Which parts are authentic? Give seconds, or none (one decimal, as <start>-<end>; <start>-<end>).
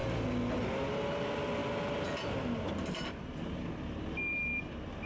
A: 0.0-5.1